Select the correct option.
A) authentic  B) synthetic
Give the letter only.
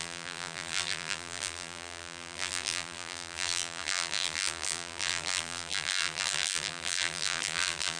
B